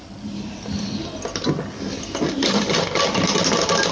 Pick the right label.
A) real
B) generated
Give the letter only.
A